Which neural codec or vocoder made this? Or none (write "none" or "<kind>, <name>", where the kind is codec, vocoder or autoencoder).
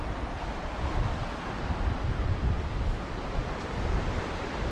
vocoder, BigVGAN v2